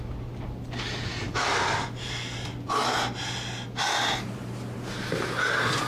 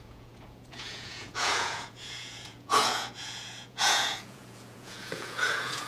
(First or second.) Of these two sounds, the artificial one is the second